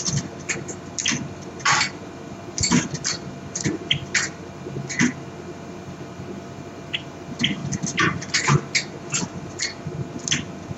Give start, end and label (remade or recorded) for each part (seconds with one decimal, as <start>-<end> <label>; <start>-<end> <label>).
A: 0.0-10.8 recorded